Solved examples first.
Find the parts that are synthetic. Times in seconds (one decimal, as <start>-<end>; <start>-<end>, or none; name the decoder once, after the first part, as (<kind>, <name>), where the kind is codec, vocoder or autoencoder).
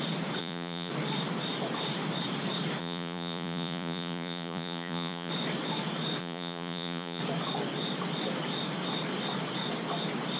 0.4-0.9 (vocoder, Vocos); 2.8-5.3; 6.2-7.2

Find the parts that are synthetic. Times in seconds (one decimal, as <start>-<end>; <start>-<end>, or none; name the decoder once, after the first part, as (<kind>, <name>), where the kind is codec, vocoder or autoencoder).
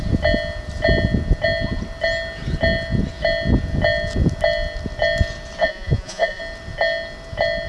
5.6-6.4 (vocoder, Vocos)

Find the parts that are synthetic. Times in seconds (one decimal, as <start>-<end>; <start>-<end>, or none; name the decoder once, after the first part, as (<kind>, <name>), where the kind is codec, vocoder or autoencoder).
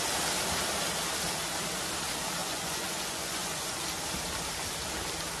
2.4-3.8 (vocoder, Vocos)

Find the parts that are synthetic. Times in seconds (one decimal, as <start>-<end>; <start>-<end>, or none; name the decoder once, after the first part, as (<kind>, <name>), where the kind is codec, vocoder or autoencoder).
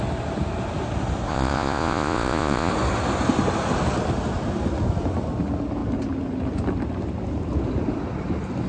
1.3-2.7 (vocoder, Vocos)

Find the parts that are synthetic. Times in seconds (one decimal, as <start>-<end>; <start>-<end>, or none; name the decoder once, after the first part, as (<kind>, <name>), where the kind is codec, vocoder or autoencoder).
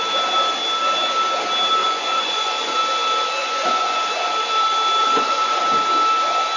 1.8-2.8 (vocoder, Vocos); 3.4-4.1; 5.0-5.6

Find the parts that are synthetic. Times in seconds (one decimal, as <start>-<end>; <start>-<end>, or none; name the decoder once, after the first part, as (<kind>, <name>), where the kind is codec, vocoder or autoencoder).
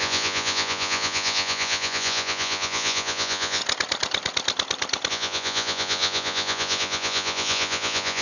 0.0-3.6 (vocoder, Vocos); 5.1-8.2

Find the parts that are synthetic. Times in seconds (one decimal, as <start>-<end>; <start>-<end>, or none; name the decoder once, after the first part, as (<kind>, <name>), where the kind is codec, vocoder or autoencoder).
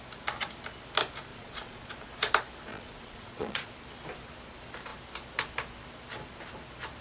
1.3-1.9 (vocoder, Vocos); 2.7-3.7